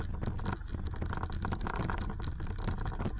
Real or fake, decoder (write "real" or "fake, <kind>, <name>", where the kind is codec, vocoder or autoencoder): real